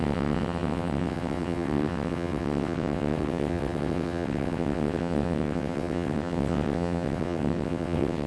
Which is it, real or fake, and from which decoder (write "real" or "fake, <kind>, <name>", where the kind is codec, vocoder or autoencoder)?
fake, vocoder, WaveNeXt